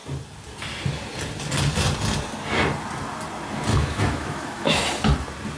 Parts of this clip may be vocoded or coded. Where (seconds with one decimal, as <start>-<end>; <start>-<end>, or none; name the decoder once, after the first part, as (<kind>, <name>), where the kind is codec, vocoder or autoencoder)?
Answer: 3.7-4.8 (autoencoder, DAC-VAE)

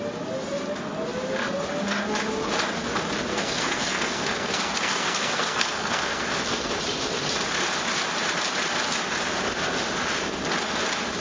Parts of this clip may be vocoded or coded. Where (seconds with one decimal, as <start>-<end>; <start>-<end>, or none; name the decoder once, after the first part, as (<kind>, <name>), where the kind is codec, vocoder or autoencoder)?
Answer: 3.3-6.7 (codec, SNAC)